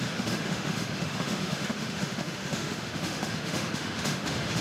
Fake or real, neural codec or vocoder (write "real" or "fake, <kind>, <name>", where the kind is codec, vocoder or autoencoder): fake, autoencoder, DAC-VAE